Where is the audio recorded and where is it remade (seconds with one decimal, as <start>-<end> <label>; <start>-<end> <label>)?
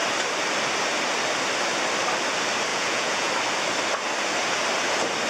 0.0-2.7 recorded; 2.7-3.3 remade; 3.3-5.3 recorded